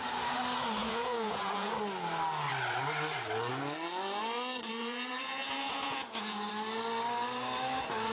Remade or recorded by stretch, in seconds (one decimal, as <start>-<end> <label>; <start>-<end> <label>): 0.0-0.8 recorded; 0.8-1.7 remade; 1.7-4.8 recorded; 4.8-6.5 remade; 6.5-8.1 recorded